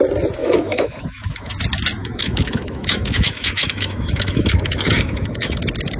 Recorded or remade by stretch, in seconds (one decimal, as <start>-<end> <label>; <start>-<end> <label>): 0.0-0.4 recorded; 0.4-1.5 remade; 1.5-2.0 recorded; 2.0-5.6 remade; 5.6-6.0 recorded